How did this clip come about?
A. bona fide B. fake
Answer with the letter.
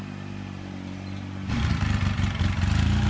A